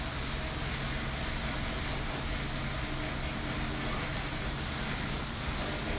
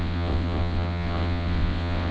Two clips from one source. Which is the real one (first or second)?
first